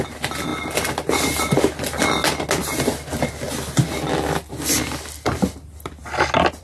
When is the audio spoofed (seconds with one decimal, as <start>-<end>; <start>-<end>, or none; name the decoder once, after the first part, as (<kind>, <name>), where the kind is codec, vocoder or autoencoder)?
none